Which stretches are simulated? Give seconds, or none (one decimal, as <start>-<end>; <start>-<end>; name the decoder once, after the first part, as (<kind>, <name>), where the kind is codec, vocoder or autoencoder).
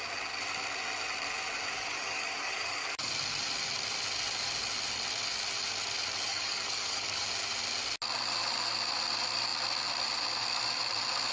1.7-3.1 (codec, DAC); 6.3-7.2